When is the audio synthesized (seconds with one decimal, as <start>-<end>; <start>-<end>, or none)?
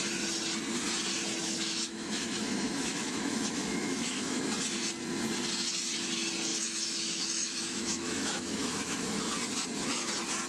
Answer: 1.4-4.4; 6.5-9.2